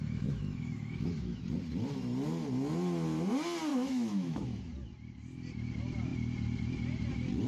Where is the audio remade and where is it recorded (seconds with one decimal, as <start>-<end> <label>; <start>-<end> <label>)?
0.0-1.4 remade; 1.4-3.7 recorded; 3.7-4.6 remade; 4.6-7.5 recorded